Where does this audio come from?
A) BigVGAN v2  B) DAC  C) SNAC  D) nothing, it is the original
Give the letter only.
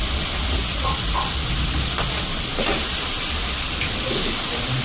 D